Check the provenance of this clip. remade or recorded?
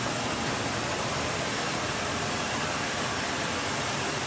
remade